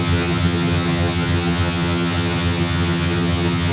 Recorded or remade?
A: remade